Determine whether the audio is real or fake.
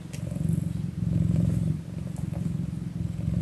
real